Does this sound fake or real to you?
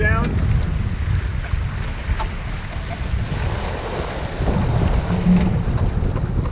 real